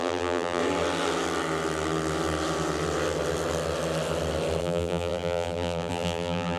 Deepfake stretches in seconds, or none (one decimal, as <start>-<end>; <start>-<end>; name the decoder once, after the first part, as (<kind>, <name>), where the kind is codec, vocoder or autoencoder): 0.0-0.6 (vocoder, BigVGAN v2); 4.6-6.6